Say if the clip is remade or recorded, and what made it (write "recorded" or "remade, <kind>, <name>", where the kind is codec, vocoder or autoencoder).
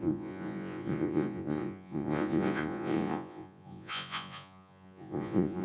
remade, vocoder, Vocos